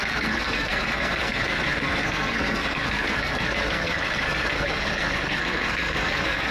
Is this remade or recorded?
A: remade